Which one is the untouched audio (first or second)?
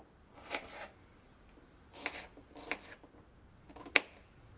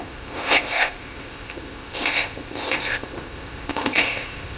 first